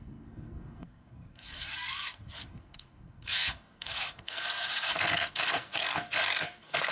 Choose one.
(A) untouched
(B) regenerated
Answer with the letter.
B